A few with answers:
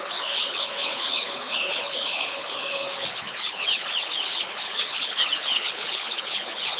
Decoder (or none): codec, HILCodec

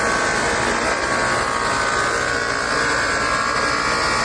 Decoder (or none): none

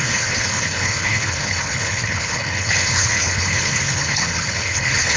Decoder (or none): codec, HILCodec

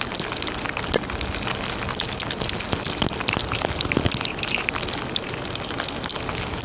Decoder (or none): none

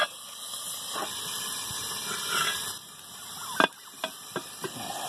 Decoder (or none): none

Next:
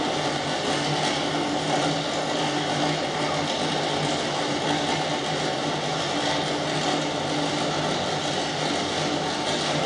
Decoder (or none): none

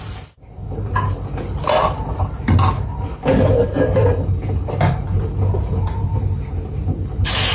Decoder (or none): none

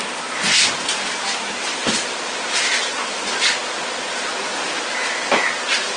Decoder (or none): none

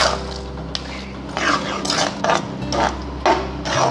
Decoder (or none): none